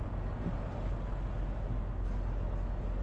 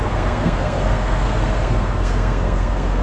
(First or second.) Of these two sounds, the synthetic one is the second